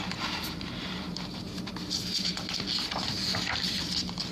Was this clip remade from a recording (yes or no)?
no